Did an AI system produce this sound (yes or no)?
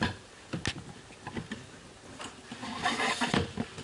no